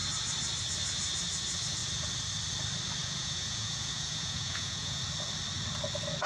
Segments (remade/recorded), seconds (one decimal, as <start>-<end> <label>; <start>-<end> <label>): 0.0-3.0 recorded; 3.0-5.0 remade; 5.0-6.3 recorded